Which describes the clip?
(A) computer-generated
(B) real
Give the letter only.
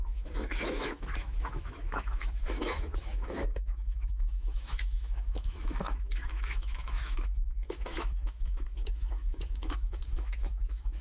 A